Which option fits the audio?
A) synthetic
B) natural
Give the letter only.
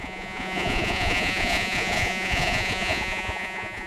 A